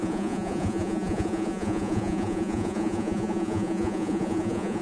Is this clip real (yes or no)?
no